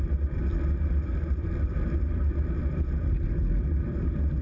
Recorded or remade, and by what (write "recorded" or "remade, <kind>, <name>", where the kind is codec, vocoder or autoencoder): remade, vocoder, BigVGAN v2